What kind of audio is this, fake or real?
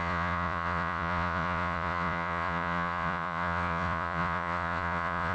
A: fake